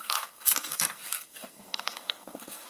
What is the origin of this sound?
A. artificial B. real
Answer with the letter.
A